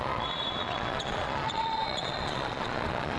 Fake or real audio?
fake